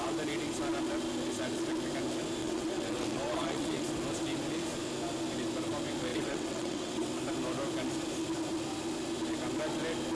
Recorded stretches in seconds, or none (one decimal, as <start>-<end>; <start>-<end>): 0.0-2.4; 3.9-6.1; 7.1-10.1